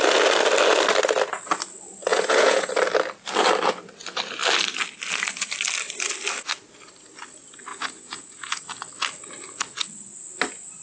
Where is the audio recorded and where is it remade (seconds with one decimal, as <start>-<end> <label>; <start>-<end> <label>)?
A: 0.0-2.1 recorded; 2.1-2.7 remade; 2.7-7.7 recorded; 7.7-8.6 remade; 8.6-10.8 recorded